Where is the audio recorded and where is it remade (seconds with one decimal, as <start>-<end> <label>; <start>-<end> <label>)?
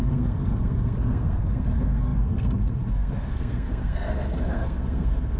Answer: 0.0-5.4 remade